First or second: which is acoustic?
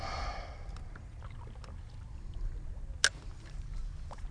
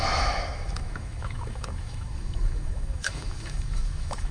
first